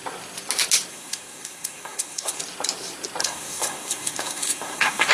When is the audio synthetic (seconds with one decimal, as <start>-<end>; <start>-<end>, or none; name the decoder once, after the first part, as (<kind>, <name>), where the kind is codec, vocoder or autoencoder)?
0.9-2.4 (codec, SNAC); 3.2-5.1